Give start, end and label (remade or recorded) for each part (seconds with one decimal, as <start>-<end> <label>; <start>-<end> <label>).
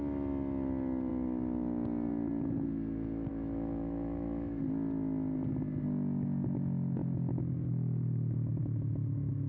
0.0-3.3 recorded; 3.3-4.6 remade; 4.6-9.5 recorded